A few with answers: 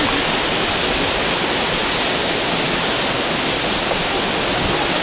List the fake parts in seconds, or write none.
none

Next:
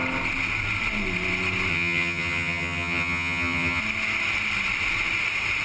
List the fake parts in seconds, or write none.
1.7-3.8 (vocoder, HiFi-GAN)

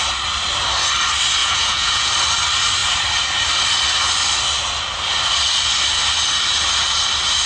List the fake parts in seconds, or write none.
1.4-2.1 (vocoder, Vocos)

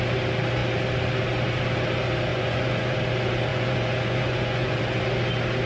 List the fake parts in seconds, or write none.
2.3-2.9 (vocoder, Vocos); 3.5-4.8

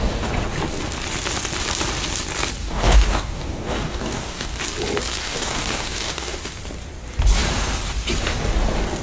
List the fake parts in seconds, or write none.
2.6-4.6 (codec, DAC); 5.2-6.4

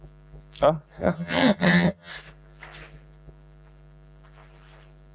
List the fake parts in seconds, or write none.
1.0-2.1 (vocoder, HiFi-GAN)

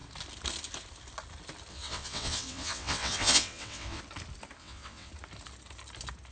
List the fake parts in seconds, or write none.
1.7-4.0 (vocoder, WaveNeXt); 4.6-5.1

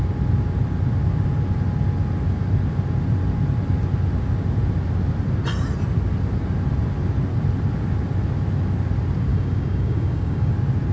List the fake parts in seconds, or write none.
9.3-10.5 (codec, DAC)